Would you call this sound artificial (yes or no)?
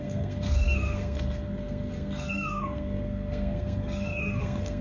yes